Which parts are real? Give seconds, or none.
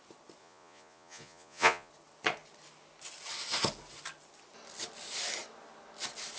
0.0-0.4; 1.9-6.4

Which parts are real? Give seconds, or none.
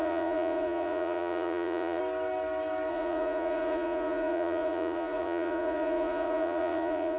2.0-2.9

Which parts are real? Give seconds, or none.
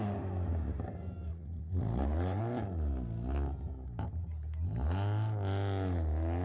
0.0-1.3; 2.4-6.4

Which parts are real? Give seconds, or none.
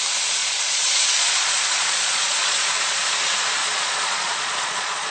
0.0-0.4; 3.0-3.6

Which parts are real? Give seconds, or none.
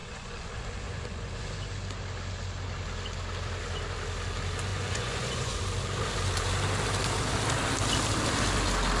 1.5-4.7; 5.6-9.0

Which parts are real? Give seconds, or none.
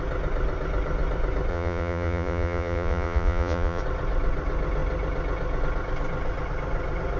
0.0-1.5; 3.8-7.2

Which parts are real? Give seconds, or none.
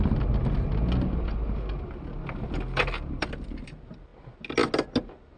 0.0-5.4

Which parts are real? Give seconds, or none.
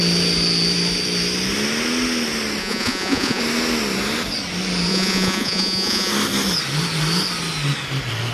0.0-2.6; 3.4-4.9; 6.1-8.3